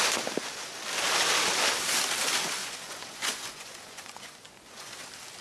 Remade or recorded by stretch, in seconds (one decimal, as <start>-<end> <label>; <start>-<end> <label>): 0.0-2.6 recorded; 2.6-4.9 remade; 4.9-5.4 recorded